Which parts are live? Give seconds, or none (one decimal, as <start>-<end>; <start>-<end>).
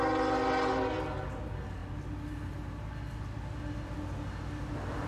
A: 0.0-5.1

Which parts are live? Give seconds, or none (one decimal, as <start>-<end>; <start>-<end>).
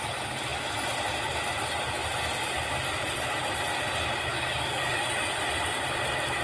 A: 0.0-4.3; 5.0-6.4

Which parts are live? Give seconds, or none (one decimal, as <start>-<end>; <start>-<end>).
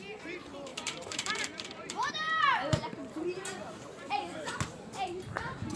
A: 0.0-0.7; 2.1-3.0; 4.5-5.8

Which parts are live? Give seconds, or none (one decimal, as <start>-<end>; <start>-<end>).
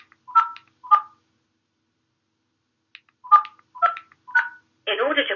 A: 0.0-5.4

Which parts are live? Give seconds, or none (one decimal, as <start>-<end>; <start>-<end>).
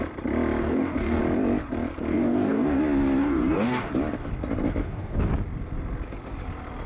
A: 0.0-0.6; 1.2-2.1; 2.8-3.2; 3.8-4.8; 5.3-6.9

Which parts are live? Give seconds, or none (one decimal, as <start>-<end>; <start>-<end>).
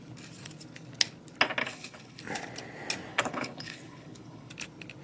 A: 0.0-1.6; 2.2-3.1; 4.5-5.0